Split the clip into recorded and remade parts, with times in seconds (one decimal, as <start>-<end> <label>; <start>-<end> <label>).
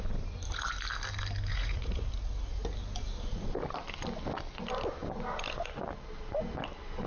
0.0-1.5 recorded; 1.5-2.1 remade; 2.1-7.1 recorded